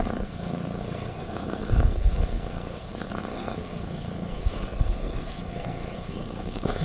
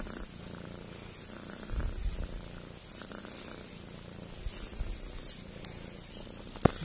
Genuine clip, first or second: second